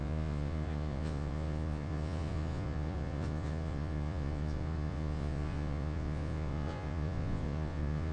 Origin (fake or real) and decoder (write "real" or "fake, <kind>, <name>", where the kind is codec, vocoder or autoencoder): fake, vocoder, Vocos